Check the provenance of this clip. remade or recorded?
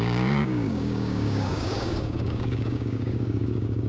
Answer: remade